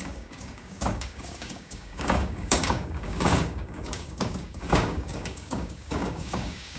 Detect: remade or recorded remade